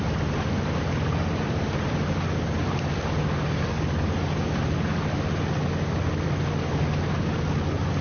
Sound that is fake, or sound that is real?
real